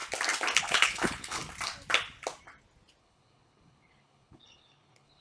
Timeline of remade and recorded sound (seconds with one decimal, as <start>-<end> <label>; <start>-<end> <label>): 0.0-0.6 recorded; 0.6-1.4 remade; 1.4-3.0 recorded; 3.0-5.2 remade